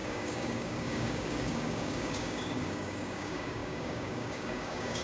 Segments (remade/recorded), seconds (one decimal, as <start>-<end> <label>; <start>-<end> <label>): 0.0-5.0 remade